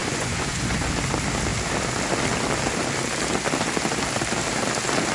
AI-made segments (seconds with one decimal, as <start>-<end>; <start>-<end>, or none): 0.0-0.9